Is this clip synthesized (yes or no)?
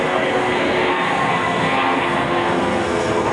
yes